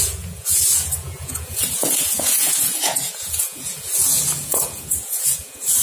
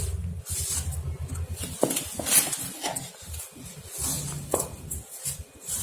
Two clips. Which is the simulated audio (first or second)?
first